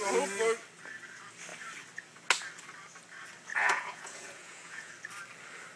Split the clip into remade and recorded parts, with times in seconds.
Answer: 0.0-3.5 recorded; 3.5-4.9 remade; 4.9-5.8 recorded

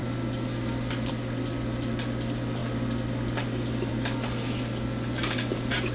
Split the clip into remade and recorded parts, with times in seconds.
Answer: 0.0-5.9 recorded

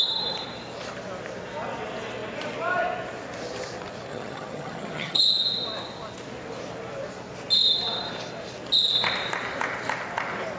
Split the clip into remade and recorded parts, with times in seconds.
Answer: 0.0-4.1 recorded; 4.1-5.2 remade; 5.2-10.6 recorded

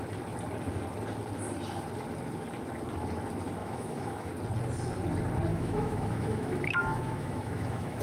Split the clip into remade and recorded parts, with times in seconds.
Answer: 0.0-3.6 recorded; 3.6-4.3 remade; 4.3-5.5 recorded; 5.5-8.0 remade

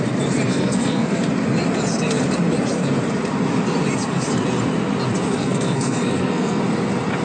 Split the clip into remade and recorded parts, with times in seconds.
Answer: 0.0-0.5 recorded; 0.5-1.2 remade; 1.2-5.4 recorded; 5.4-6.6 remade; 6.6-7.2 recorded